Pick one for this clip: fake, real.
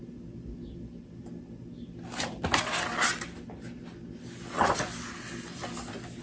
real